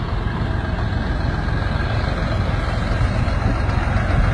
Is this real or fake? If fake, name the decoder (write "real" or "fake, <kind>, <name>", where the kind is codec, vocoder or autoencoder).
real